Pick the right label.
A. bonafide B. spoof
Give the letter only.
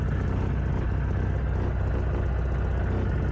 A